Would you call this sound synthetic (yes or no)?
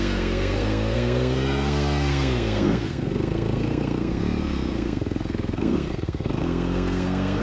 yes